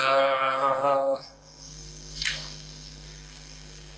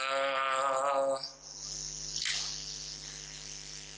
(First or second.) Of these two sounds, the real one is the second